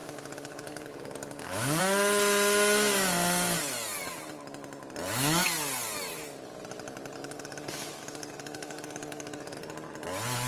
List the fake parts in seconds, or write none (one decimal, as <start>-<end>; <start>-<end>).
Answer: 0.0-1.8; 7.2-9.6